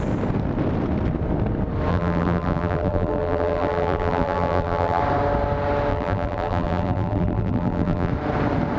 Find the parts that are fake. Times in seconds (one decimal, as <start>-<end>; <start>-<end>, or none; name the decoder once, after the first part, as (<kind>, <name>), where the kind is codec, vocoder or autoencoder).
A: 1.9-5.0 (vocoder, BigVGAN v2); 5.9-8.1